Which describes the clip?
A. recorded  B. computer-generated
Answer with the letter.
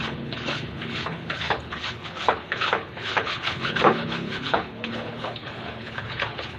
B